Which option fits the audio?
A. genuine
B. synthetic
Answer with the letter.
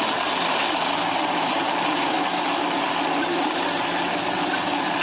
A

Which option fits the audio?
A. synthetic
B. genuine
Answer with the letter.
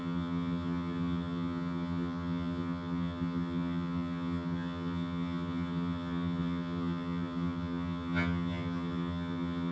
A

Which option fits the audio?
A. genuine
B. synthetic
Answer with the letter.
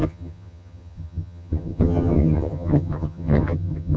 B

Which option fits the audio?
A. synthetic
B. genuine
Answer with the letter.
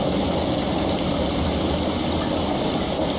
B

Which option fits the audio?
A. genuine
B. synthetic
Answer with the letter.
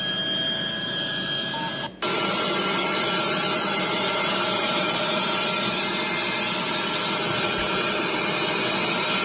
A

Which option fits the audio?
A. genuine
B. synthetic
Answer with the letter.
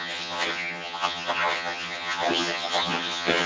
B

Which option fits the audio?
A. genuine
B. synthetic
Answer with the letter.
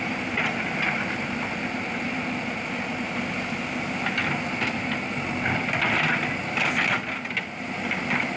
A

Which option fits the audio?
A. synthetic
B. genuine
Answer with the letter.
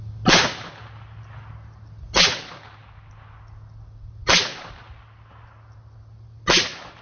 B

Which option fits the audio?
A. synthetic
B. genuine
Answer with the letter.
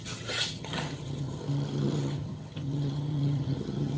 A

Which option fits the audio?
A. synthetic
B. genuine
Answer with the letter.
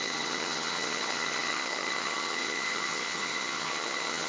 A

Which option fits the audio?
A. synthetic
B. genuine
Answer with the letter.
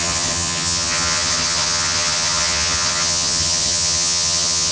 A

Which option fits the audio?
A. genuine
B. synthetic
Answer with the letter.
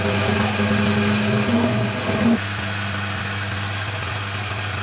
A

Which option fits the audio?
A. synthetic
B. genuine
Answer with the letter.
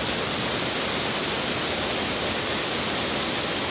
B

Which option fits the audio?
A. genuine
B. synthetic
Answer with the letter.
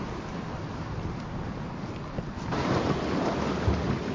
A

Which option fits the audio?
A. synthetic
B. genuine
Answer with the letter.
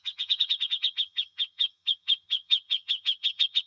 A